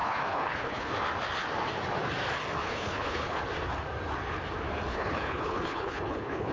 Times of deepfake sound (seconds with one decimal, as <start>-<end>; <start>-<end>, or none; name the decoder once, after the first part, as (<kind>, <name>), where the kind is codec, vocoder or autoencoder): 0.0-0.9 (codec, HILCodec); 2.6-3.4; 4.9-6.5